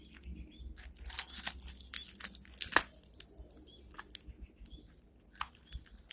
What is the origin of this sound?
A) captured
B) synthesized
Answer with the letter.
A